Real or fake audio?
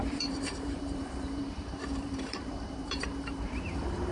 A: fake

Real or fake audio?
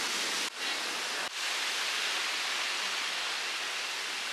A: real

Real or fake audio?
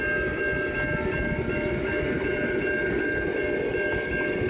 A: real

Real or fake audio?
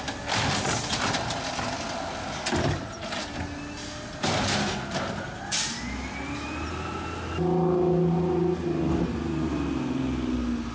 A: real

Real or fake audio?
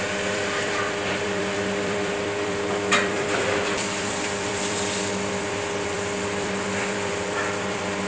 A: fake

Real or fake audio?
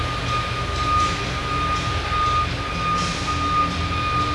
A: real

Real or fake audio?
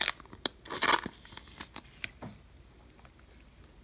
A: real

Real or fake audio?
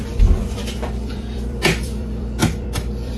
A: fake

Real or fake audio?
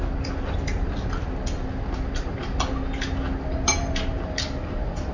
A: real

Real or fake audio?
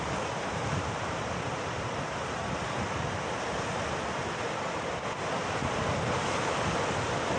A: real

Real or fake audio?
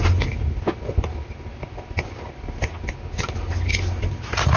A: real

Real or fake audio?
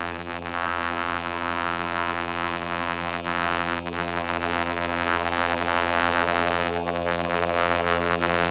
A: fake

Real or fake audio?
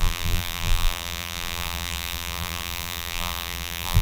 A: fake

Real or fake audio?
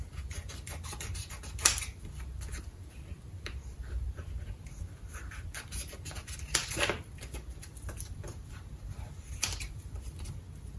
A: fake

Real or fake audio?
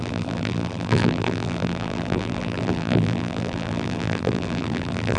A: fake